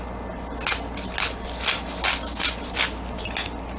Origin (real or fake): real